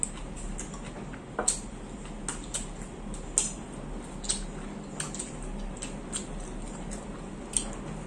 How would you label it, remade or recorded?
recorded